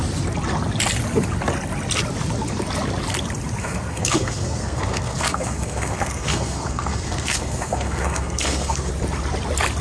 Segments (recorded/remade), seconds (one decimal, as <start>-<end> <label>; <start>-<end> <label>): 0.0-3.6 recorded; 3.6-8.9 remade; 8.9-9.8 recorded

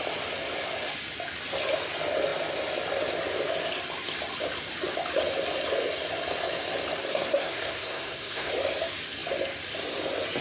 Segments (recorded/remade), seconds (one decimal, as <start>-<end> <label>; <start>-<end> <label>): 0.0-7.0 recorded; 7.0-8.5 remade; 8.5-10.4 recorded

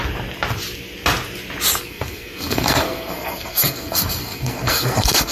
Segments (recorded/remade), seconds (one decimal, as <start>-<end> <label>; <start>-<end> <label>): 0.0-1.8 recorded; 1.8-5.3 remade

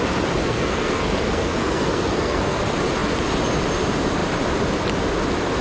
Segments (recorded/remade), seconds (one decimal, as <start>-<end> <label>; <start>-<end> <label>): 0.0-0.4 recorded; 0.4-2.6 remade; 2.6-5.6 recorded